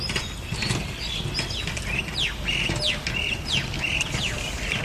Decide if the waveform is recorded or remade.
recorded